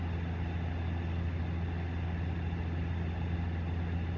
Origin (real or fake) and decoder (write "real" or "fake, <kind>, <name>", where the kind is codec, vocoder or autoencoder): real